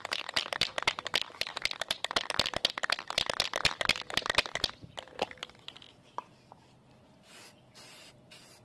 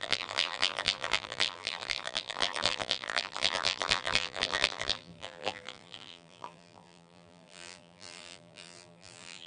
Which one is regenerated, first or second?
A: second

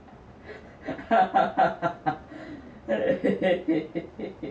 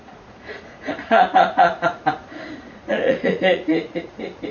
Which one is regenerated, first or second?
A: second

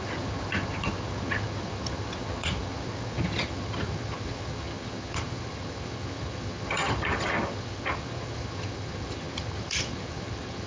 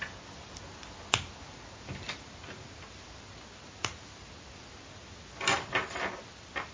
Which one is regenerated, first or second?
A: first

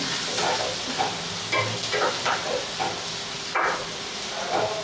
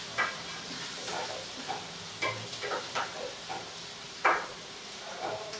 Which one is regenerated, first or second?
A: second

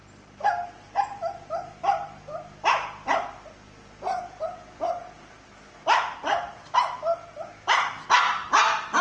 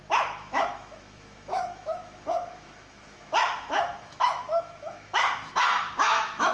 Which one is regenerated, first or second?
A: second